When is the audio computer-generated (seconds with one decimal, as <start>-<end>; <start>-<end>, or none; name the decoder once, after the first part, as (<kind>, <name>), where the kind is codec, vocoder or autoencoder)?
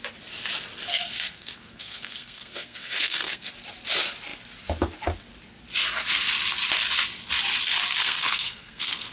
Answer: 0.9-3.5 (codec, SNAC); 8.0-9.1